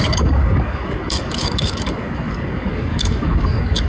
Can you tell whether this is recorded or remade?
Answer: remade